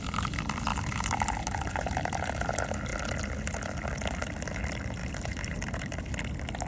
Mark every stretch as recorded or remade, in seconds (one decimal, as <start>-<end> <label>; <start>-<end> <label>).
0.0-0.7 recorded; 0.7-2.3 remade; 2.3-5.0 recorded; 5.0-6.0 remade; 6.0-6.7 recorded